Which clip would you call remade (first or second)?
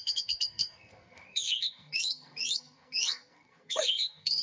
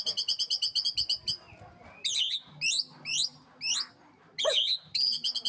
first